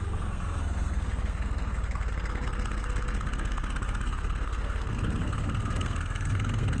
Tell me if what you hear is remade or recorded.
remade